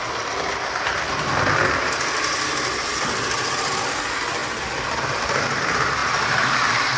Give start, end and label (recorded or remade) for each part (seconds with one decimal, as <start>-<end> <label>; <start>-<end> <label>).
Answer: 0.0-7.0 recorded